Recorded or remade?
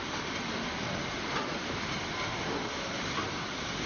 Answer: recorded